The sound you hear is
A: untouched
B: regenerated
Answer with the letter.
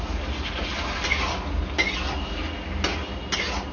A